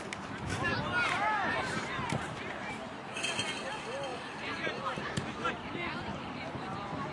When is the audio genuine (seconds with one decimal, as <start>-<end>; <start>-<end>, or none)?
0.0-0.7; 2.7-4.1; 5.5-6.1